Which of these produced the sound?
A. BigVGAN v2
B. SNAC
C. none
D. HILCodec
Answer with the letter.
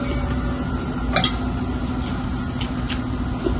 C